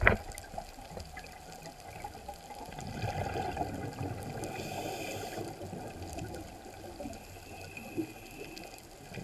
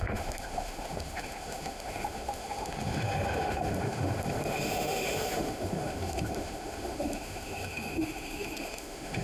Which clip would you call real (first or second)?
first